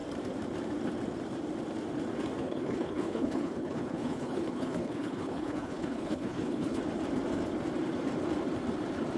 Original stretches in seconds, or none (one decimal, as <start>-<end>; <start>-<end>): 0.0-2.4; 6.8-9.2